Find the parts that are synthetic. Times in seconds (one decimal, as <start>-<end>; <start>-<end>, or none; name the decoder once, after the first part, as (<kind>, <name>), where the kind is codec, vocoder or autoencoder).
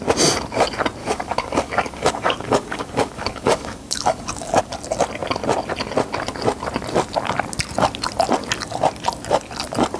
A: 1.0-4.6 (codec, DAC)